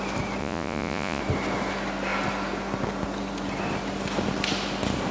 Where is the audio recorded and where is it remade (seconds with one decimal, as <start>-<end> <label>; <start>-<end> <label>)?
0.0-0.4 recorded; 0.4-1.2 remade; 1.2-5.1 recorded